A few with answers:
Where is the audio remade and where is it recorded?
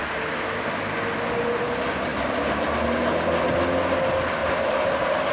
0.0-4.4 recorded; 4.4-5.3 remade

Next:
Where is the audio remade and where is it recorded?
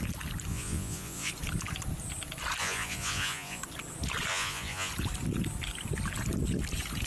0.0-0.5 recorded; 0.5-1.3 remade; 1.3-2.6 recorded; 2.6-3.6 remade; 3.6-4.3 recorded; 4.3-4.9 remade; 4.9-7.1 recorded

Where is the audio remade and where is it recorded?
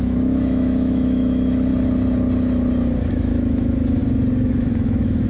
0.0-1.7 remade; 1.7-3.1 recorded; 3.1-4.0 remade; 4.0-4.6 recorded; 4.6-5.3 remade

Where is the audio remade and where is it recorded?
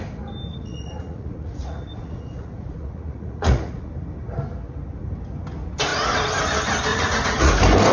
0.0-0.5 recorded; 0.5-3.9 remade; 3.9-6.9 recorded; 6.9-7.5 remade; 7.5-7.9 recorded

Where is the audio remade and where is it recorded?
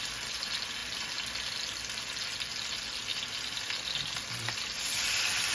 0.0-5.5 recorded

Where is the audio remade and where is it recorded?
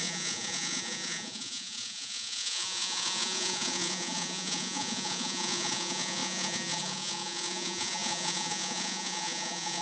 0.0-9.8 remade